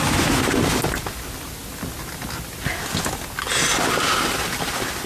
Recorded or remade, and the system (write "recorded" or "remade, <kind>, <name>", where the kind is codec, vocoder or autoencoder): recorded